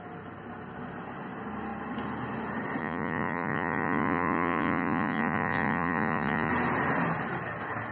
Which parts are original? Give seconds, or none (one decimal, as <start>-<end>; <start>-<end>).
0.0-2.8; 6.5-7.9